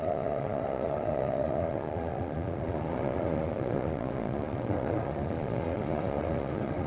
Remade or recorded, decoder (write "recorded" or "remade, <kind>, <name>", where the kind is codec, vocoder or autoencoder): remade, vocoder, Vocos